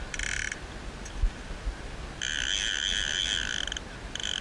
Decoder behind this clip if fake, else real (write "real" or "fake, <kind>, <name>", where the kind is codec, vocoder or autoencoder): real